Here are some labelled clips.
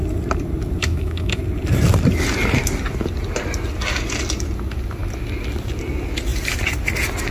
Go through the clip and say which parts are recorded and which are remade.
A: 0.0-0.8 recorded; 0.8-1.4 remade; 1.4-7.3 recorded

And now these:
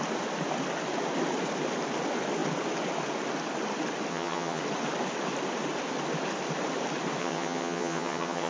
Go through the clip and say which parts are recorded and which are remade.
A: 0.0-4.1 recorded; 4.1-4.6 remade; 4.6-7.2 recorded; 7.2-8.5 remade

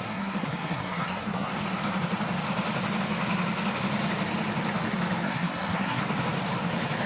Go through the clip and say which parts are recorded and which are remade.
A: 0.0-1.5 remade; 1.5-5.2 recorded; 5.2-6.0 remade; 6.0-7.1 recorded

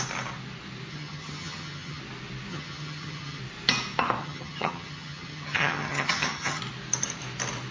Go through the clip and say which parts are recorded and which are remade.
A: 0.0-0.9 recorded; 0.9-2.0 remade; 2.0-2.5 recorded; 2.5-3.4 remade; 3.4-4.2 recorded; 4.2-6.6 remade; 6.6-7.7 recorded

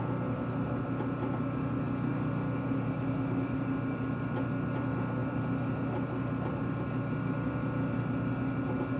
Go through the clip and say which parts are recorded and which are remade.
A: 0.0-9.0 recorded

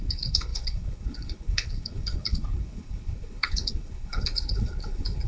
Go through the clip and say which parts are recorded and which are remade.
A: 0.0-5.3 remade